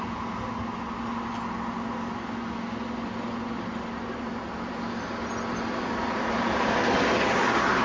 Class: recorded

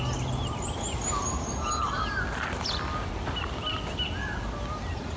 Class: recorded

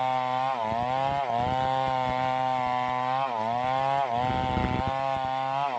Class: recorded